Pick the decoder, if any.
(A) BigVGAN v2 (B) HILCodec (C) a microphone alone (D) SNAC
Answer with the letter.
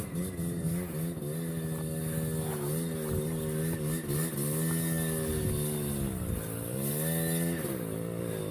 C